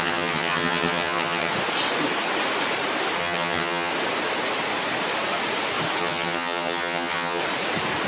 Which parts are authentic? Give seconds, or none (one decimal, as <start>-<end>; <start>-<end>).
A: 1.5-3.2; 3.9-6.0; 7.4-8.1